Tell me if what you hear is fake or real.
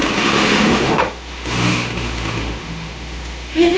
fake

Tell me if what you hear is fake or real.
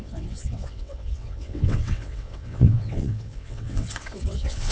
fake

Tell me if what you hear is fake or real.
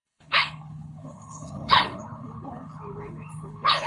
fake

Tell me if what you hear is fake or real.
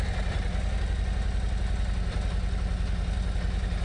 real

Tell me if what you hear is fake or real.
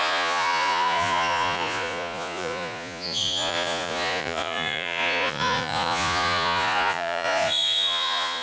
fake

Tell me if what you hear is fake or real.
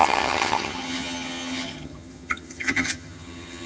fake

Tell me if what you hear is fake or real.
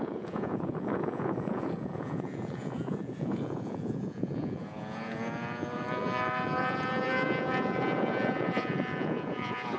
fake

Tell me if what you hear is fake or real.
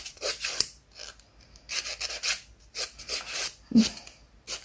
real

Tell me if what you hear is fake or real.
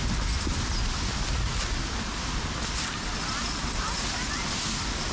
real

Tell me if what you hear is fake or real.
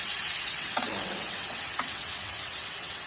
fake